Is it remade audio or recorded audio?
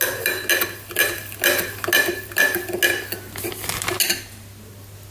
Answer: recorded